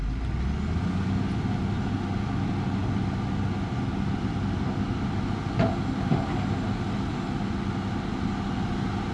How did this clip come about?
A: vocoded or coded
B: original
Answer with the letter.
B